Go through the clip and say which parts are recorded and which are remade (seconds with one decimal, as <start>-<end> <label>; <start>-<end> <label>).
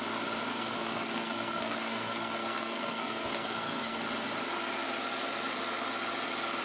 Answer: 0.0-0.5 recorded; 0.5-4.0 remade; 4.0-6.6 recorded